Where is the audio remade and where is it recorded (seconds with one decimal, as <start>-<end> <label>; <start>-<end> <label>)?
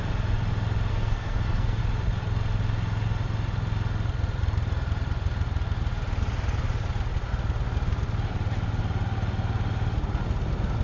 0.0-0.9 recorded; 0.9-1.8 remade; 1.8-10.8 recorded